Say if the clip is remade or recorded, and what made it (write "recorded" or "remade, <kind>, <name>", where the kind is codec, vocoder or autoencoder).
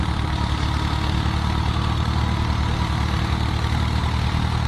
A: recorded